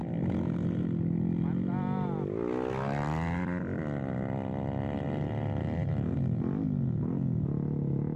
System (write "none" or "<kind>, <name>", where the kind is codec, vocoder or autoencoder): none